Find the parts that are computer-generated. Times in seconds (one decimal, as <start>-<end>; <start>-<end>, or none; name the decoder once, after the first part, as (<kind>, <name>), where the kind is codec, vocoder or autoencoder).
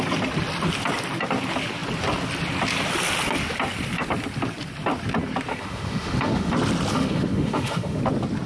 5.5-6.5 (autoencoder, DAC-VAE); 6.9-8.0